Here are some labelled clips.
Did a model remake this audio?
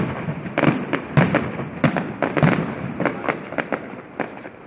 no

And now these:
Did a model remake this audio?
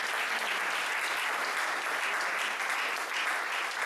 no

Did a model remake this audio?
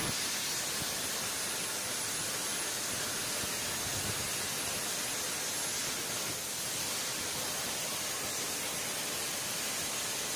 no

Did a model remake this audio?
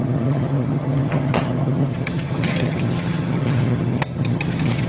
yes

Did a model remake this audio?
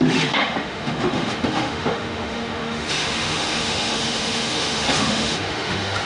yes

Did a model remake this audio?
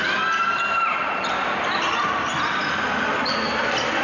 yes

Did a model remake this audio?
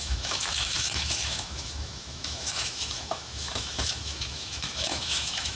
yes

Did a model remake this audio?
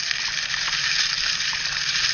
no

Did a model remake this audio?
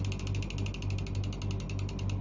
no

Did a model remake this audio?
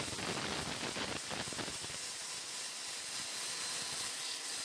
no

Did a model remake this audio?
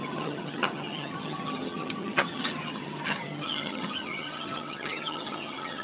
yes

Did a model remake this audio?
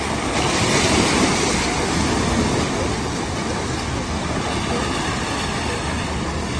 no